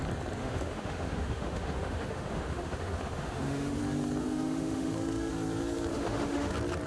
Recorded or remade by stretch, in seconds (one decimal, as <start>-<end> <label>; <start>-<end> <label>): 0.0-0.4 recorded; 0.4-3.8 remade; 3.8-4.2 recorded; 4.2-5.3 remade; 5.3-5.9 recorded; 5.9-6.5 remade; 6.5-6.9 recorded